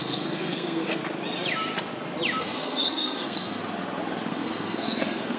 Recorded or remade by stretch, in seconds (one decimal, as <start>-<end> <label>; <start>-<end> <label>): 0.0-1.0 remade; 1.0-2.4 recorded; 2.4-3.6 remade; 3.6-4.3 recorded; 4.3-5.4 remade